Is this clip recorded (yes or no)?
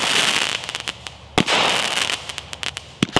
yes